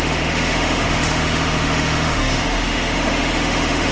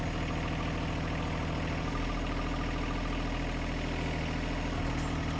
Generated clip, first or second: first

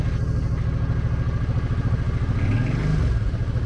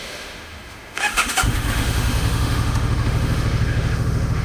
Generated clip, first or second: second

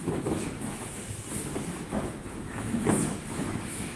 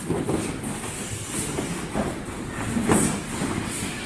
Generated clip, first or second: first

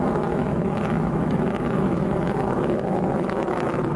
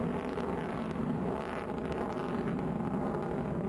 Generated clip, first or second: first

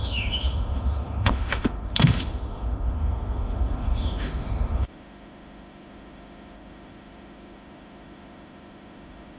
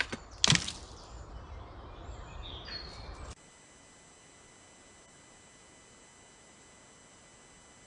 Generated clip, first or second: first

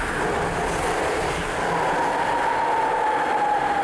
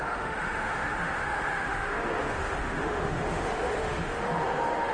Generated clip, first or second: second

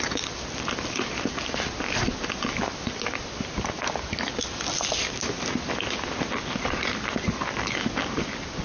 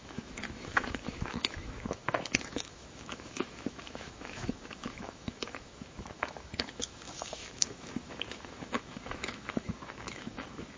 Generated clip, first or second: second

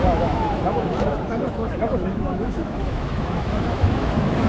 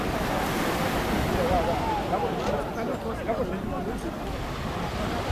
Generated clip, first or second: first